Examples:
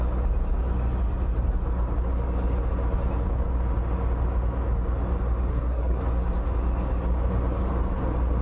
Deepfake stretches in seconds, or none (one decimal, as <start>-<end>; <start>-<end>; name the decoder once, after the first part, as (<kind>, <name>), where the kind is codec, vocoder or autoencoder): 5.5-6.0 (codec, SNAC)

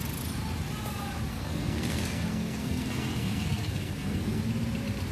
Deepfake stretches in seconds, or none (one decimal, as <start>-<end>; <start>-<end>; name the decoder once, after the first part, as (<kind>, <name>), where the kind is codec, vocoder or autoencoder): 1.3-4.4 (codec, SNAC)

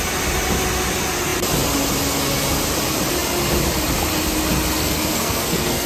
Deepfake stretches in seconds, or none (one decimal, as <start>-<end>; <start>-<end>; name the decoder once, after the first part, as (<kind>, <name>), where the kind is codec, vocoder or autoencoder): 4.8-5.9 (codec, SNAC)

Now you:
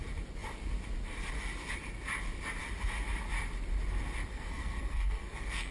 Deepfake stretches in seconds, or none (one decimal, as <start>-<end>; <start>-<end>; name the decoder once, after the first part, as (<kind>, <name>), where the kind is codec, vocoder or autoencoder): 4.3-5.7 (codec, SNAC)

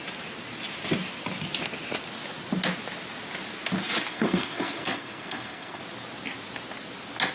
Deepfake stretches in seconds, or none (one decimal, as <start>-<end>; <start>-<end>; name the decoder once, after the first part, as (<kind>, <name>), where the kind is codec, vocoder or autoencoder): 4.1-5.8 (codec, SNAC)